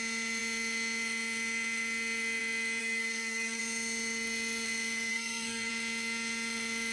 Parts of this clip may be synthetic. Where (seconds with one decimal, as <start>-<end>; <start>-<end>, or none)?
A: 2.8-3.6; 5.1-5.7